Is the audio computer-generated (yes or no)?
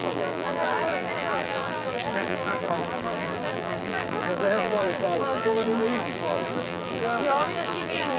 yes